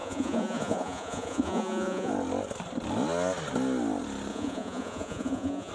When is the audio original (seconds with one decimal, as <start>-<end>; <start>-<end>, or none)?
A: 2.1-4.3